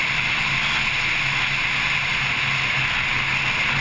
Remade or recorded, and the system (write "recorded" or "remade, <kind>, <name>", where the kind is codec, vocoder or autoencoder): recorded